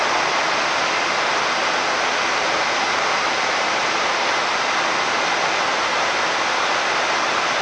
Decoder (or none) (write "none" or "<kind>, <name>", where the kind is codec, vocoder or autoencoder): none